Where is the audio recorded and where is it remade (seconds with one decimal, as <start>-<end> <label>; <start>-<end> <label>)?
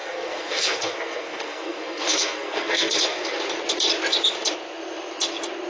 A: 0.0-3.4 remade; 3.4-5.7 recorded